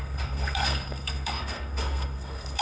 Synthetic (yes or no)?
yes